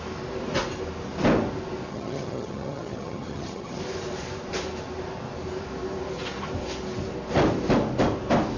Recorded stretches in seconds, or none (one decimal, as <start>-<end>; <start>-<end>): 0.0-1.9; 3.8-8.6